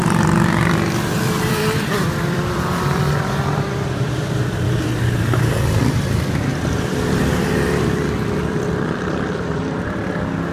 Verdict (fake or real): fake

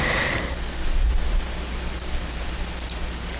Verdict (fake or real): real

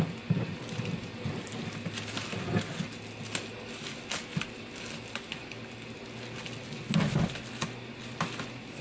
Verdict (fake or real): real